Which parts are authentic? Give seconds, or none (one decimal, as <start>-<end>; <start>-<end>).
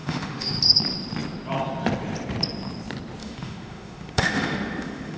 0.6-3.2